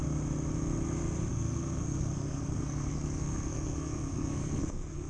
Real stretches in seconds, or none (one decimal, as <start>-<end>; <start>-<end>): 0.0-1.3